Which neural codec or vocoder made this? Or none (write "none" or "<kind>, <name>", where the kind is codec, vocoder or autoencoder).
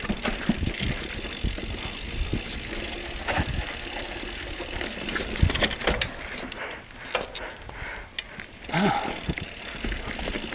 none